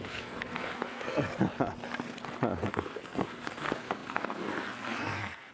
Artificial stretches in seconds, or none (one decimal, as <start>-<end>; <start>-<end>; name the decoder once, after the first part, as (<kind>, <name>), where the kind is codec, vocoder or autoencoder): 0.0-1.3 (codec, SNAC); 2.7-5.5